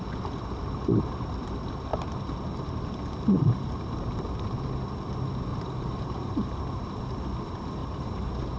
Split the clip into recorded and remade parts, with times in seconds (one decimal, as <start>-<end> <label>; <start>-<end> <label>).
0.0-5.5 recorded; 5.5-6.6 remade; 6.6-7.8 recorded; 7.8-8.6 remade